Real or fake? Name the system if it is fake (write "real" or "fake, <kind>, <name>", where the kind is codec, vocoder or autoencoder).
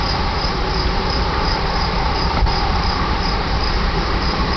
fake, vocoder, BigVGAN v2